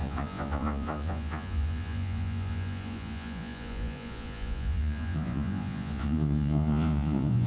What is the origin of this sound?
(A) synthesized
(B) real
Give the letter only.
A